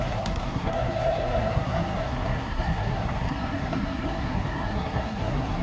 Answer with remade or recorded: remade